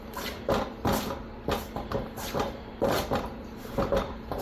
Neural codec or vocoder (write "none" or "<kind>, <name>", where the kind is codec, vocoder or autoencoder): none